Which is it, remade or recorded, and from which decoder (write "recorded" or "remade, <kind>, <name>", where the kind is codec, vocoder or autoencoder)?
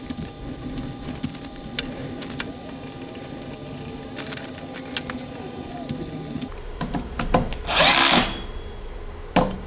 recorded